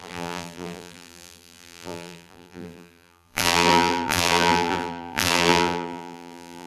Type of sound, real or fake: fake